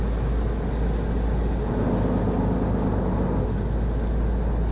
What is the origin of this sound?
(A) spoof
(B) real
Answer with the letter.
B